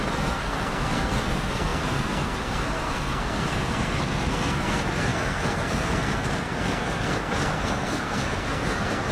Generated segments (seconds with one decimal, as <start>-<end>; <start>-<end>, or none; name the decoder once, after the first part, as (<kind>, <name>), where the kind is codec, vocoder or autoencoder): 0.0-9.1 (codec, SNAC)